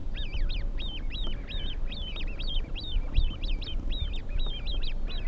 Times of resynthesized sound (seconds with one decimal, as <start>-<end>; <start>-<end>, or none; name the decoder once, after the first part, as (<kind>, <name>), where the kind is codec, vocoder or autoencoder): 0.0-5.3 (vocoder, BigVGAN v2)